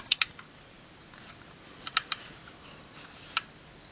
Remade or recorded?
recorded